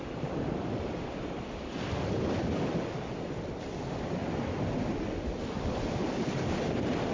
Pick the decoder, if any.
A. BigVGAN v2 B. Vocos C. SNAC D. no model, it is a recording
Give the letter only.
D